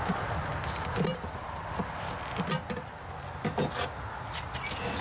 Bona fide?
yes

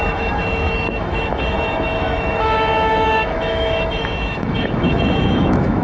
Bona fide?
no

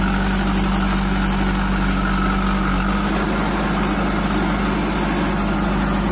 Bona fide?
yes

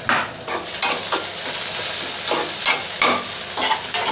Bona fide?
yes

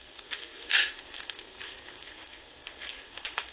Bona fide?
no